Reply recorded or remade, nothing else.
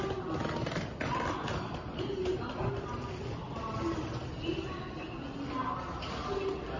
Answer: recorded